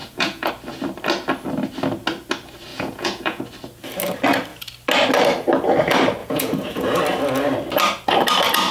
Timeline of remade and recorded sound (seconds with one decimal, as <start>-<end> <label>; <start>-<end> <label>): 0.0-0.5 remade; 0.5-2.7 recorded; 2.7-3.4 remade; 3.4-6.2 recorded; 6.2-7.0 remade; 7.0-8.7 recorded